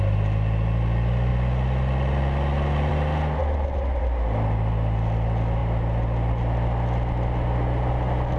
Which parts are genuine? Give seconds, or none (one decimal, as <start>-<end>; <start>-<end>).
0.0-8.4

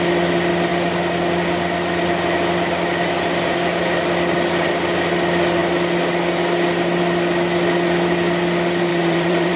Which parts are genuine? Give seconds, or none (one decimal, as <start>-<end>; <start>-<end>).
0.0-8.9

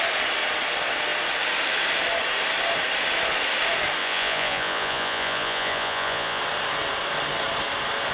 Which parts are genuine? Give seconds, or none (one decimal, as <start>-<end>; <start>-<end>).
0.0-4.0; 6.4-8.1

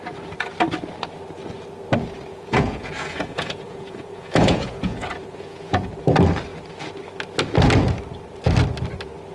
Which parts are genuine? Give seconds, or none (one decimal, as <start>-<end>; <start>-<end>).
0.0-2.3; 5.9-9.3

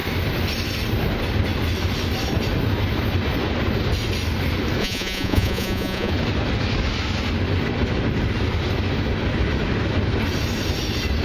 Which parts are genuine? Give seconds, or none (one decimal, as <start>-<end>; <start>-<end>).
0.0-4.8; 6.1-11.2

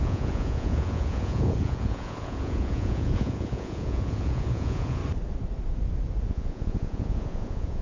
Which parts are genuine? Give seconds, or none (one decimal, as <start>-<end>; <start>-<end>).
5.0-6.3

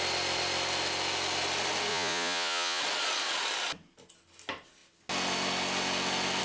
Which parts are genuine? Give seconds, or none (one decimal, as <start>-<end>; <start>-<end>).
0.0-1.9; 2.8-6.4